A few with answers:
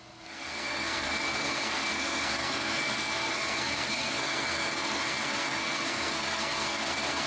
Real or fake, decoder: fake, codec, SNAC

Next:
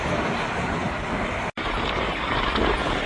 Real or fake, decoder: real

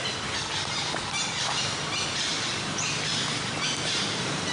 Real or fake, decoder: real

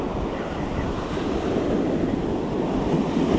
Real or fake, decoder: real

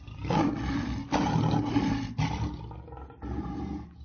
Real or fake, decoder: real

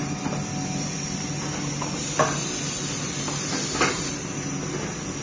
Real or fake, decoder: real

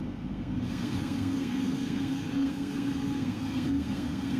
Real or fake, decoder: fake, codec, SNAC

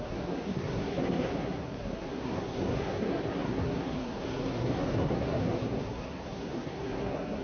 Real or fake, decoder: fake, codec, SNAC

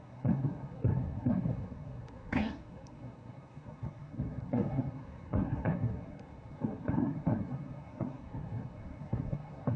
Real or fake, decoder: fake, codec, SNAC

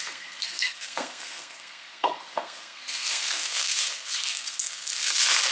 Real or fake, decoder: fake, codec, SNAC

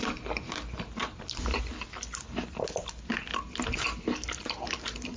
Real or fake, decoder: real